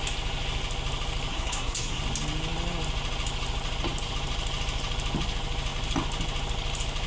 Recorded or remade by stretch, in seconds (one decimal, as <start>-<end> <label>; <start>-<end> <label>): 0.0-1.3 recorded; 1.3-2.0 remade; 2.0-7.1 recorded